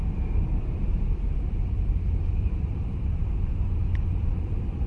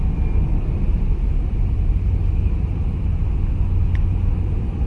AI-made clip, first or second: first